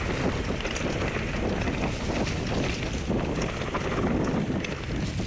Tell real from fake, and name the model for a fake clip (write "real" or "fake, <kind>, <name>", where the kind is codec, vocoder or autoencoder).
real